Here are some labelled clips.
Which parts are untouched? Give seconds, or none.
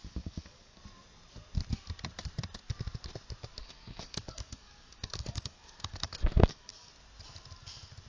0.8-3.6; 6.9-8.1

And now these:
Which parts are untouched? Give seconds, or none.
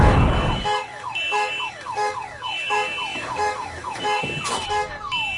none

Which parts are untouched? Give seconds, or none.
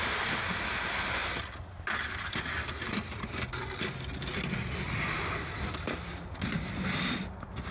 0.0-7.7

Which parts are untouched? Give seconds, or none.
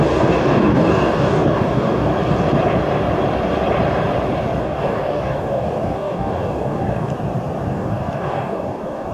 2.1-4.6; 7.1-7.7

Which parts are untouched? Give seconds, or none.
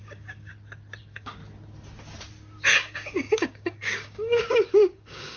0.5-1.0; 1.4-2.7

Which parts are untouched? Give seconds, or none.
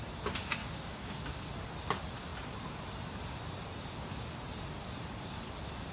0.0-0.6; 1.2-5.9